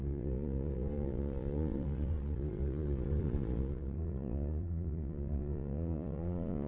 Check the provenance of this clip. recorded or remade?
remade